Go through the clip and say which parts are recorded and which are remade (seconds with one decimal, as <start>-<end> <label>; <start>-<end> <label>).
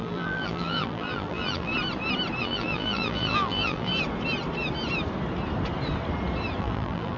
0.0-1.7 remade; 1.7-2.4 recorded; 2.4-3.9 remade; 3.9-6.6 recorded; 6.6-7.2 remade